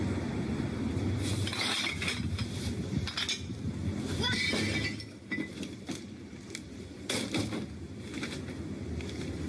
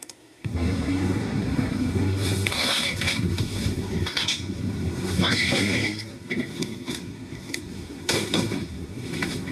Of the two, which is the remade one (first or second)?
second